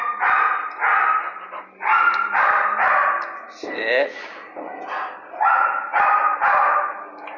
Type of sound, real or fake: real